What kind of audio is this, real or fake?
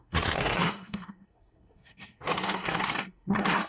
fake